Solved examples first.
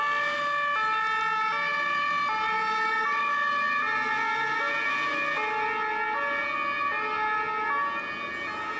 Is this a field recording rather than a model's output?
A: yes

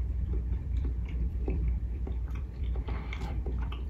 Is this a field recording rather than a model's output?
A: no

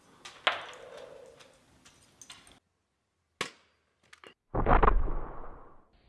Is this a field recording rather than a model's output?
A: yes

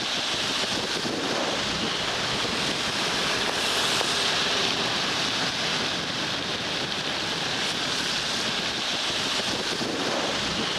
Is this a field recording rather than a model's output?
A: yes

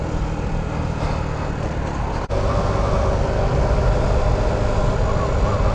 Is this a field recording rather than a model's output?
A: yes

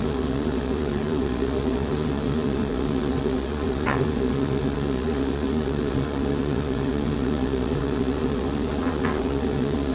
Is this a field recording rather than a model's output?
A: no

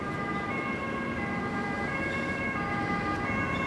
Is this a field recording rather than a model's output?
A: yes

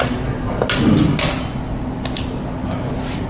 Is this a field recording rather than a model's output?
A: yes